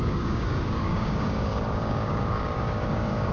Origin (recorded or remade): remade